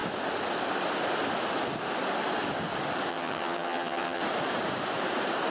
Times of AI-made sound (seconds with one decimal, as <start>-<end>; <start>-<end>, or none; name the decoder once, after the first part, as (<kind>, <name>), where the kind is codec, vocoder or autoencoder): 3.1-4.2 (vocoder, HiFi-GAN)